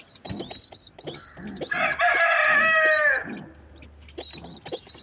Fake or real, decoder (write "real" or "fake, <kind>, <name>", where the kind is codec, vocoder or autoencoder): real